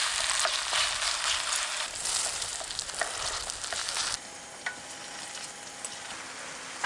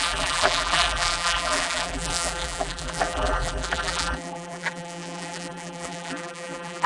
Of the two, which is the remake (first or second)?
second